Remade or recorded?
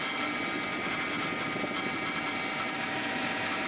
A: recorded